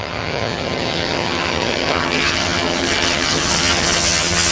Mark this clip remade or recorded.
remade